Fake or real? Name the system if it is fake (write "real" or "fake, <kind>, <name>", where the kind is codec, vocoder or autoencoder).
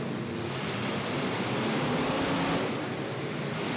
real